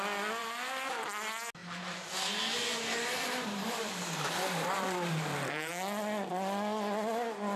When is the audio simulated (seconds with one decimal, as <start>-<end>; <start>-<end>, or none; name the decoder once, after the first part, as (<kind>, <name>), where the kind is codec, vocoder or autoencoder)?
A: 0.4-1.0 (vocoder, BigVGAN v2); 1.6-5.7

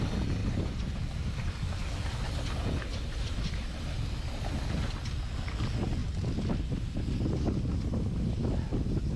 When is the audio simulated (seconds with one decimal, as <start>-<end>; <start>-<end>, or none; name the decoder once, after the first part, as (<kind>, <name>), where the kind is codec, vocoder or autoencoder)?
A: 0.4-1.7 (vocoder, BigVGAN v2); 2.9-4.5; 6.0-7.0